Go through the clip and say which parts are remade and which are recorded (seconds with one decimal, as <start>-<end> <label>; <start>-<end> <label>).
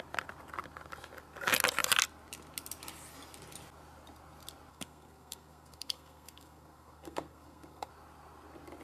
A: 0.0-4.7 recorded; 4.7-7.9 remade; 7.9-8.8 recorded